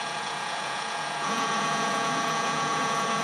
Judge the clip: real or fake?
fake